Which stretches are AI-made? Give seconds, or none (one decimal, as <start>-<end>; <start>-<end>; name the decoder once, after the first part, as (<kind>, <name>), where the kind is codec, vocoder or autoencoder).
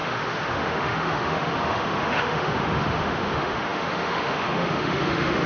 0.0-5.5 (autoencoder, DAC-VAE)